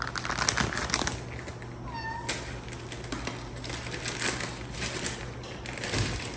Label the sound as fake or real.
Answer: real